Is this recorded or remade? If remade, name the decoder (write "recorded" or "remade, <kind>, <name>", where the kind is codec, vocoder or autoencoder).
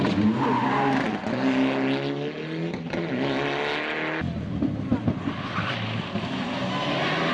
recorded